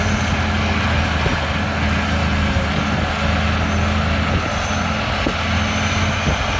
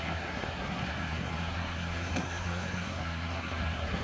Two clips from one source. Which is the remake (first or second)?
second